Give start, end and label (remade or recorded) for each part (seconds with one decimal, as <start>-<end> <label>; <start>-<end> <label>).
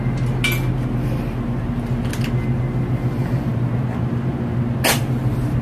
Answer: 0.0-5.6 recorded